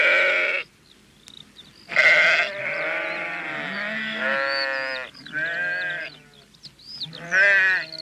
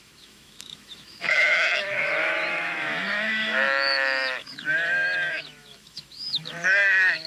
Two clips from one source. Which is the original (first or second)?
first